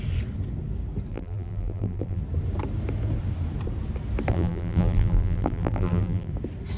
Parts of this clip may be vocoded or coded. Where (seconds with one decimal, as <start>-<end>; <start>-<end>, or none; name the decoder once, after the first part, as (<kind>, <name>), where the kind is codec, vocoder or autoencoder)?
1.1-2.2 (vocoder, BigVGAN v2); 4.3-6.3